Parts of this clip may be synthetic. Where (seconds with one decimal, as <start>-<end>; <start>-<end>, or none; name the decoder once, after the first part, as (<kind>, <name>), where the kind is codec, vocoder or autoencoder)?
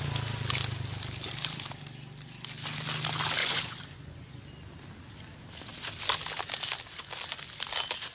3.4-4.3 (vocoder, Vocos)